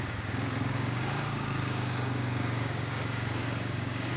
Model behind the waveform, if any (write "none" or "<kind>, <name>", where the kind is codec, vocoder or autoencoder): codec, DAC